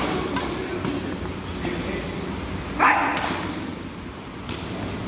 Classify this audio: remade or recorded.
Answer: recorded